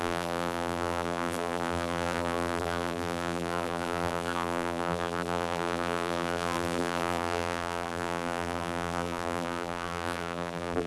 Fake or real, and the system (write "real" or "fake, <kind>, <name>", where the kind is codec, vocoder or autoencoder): fake, vocoder, BigVGAN v2